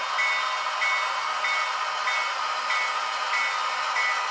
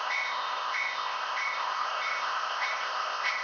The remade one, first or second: second